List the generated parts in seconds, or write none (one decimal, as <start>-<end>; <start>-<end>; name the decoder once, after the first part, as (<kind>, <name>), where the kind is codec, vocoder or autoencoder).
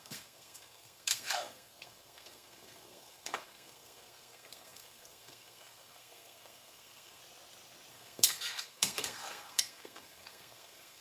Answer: 0.0-7.2 (codec, SNAC); 7.9-11.0